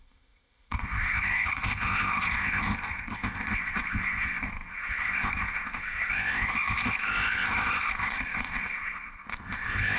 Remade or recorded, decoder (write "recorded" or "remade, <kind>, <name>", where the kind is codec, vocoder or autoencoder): remade, codec, ZipCodec